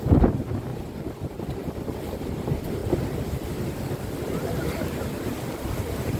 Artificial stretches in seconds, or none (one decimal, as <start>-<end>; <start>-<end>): 0.0-0.7; 1.4-2.8; 3.9-6.2